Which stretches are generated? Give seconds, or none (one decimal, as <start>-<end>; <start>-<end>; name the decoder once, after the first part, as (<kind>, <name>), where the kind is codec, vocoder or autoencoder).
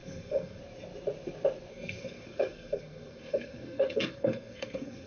0.0-0.6 (codec, SNAC); 1.7-5.1